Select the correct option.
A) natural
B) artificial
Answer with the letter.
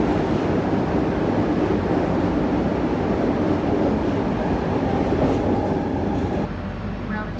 A